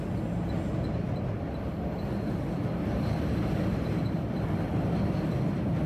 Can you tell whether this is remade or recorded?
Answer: recorded